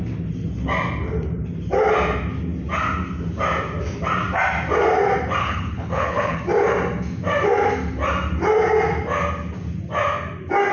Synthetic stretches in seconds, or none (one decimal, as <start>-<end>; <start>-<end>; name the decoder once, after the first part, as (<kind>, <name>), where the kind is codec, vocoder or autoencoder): 5.4-6.4 (codec, HILCodec)